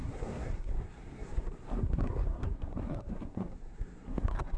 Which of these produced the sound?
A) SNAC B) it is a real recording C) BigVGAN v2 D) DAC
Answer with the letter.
A